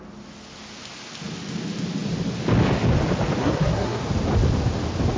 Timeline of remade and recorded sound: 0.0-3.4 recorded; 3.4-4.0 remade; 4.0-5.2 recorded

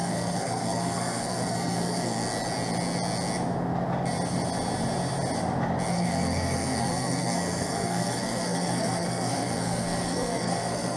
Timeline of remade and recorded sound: 0.0-2.2 remade; 2.2-5.9 recorded; 5.9-11.0 remade

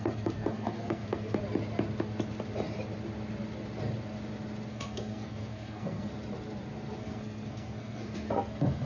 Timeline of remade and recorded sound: 0.0-1.4 remade; 1.4-4.7 recorded; 4.7-6.1 remade; 6.1-7.0 recorded; 7.0-8.9 remade

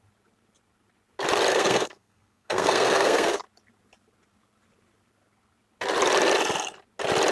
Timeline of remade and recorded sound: 0.0-1.5 recorded; 1.5-3.4 remade; 3.4-7.3 recorded

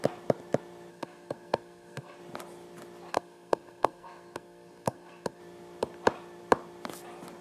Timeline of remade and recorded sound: 0.0-0.9 recorded; 0.9-2.2 remade; 2.2-3.1 recorded; 3.1-5.4 remade; 5.4-7.4 recorded

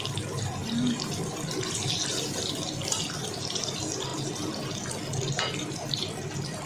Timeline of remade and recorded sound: 0.0-6.7 recorded